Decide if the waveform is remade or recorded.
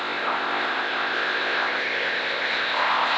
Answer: remade